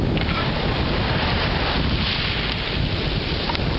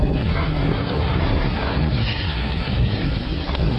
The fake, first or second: second